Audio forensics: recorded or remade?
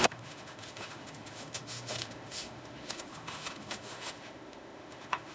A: remade